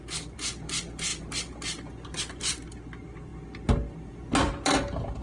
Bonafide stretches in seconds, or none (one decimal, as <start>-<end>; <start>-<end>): 0.0-5.2